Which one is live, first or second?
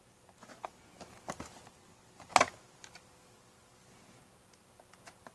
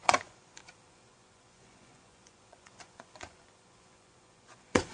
first